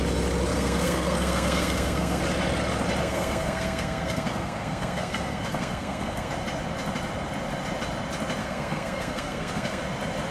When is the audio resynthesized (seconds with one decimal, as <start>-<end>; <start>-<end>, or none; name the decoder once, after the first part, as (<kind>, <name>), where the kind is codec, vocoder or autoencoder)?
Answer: 0.5-2.2 (codec, SNAC); 3.0-6.3; 8.4-9.8